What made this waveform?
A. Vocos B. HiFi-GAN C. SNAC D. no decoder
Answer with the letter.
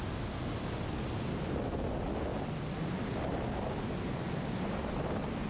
D